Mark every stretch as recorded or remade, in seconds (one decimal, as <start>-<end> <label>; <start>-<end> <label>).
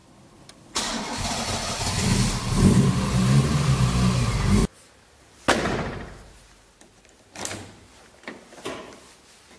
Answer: 0.0-1.0 remade; 1.0-4.6 recorded; 4.6-5.2 remade; 5.2-9.6 recorded